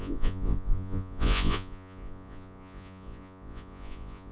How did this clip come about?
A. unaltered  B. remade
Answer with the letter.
B